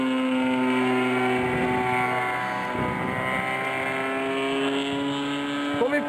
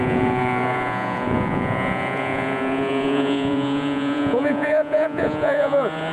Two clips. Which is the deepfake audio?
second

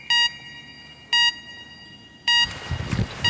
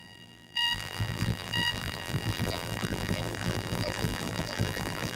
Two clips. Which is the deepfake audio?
second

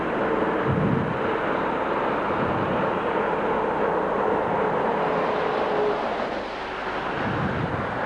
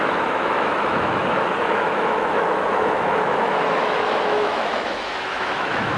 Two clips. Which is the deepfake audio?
second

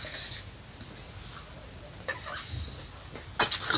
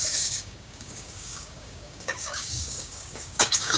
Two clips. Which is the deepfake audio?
second